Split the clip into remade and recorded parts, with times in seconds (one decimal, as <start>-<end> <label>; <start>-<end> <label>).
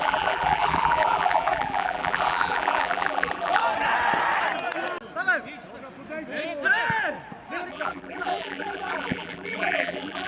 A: 0.0-3.6 remade; 3.6-7.7 recorded; 7.7-10.3 remade